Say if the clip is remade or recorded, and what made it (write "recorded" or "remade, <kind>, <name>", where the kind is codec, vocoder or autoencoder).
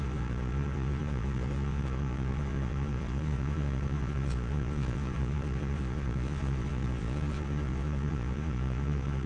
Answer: remade, vocoder, Vocos